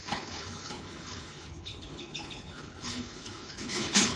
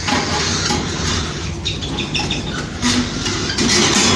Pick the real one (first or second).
second